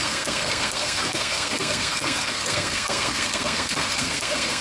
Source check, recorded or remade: remade